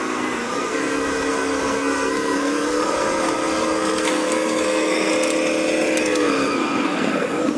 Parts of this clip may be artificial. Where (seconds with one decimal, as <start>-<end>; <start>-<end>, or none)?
0.0-5.1; 6.0-7.6